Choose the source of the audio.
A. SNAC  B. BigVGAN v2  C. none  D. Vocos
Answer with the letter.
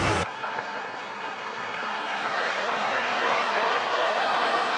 A